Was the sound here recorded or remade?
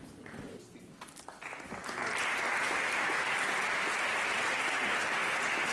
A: recorded